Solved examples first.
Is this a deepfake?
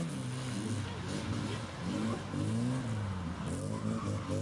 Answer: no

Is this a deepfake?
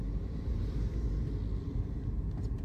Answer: no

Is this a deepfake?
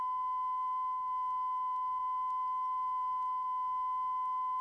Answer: no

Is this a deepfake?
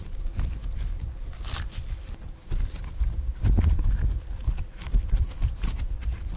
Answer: no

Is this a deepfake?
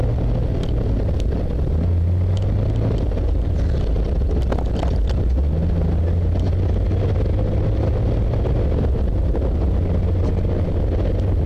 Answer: no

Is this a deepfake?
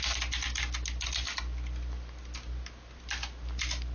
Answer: no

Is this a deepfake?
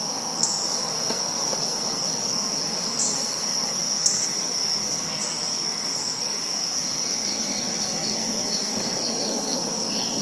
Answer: yes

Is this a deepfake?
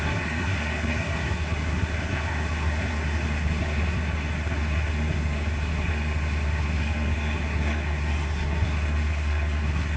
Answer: yes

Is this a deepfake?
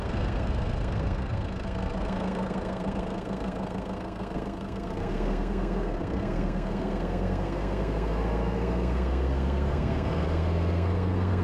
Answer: yes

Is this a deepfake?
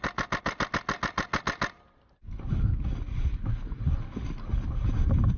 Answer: no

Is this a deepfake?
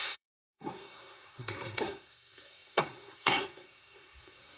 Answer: yes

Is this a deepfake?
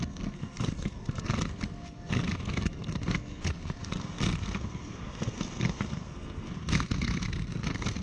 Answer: yes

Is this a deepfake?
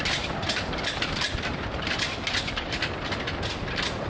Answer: no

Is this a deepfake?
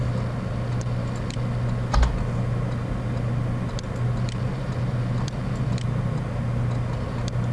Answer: no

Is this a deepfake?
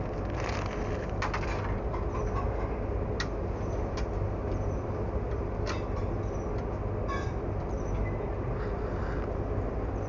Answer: no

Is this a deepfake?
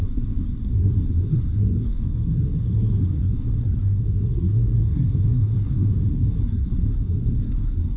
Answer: yes